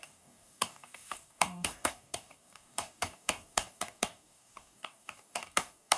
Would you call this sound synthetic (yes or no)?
yes